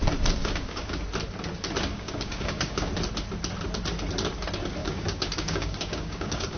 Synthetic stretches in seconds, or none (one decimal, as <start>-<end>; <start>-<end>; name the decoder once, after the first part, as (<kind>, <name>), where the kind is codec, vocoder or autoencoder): 0.4-0.9 (codec, DAC); 1.9-2.9; 4.8-6.6